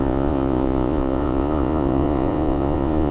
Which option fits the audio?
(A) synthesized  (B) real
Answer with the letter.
A